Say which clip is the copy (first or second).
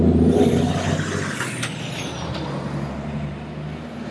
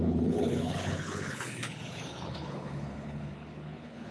second